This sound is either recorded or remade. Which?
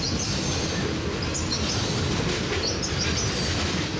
recorded